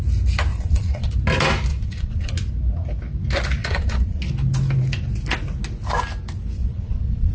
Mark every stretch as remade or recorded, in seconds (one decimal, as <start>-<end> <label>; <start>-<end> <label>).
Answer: 0.0-0.5 recorded; 0.5-1.1 remade; 1.1-1.7 recorded; 1.7-2.3 remade; 2.3-3.6 recorded; 3.6-4.2 remade; 4.2-6.6 recorded; 6.6-7.3 remade